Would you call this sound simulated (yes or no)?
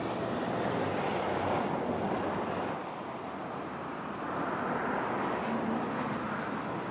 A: no